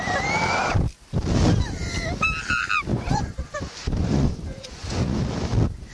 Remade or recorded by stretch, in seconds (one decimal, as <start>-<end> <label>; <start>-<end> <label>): 0.0-2.9 recorded; 2.9-3.6 remade; 3.6-4.0 recorded; 4.0-5.2 remade; 5.2-5.9 recorded